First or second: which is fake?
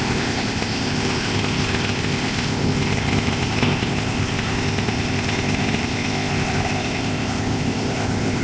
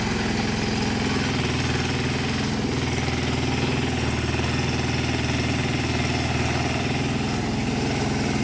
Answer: first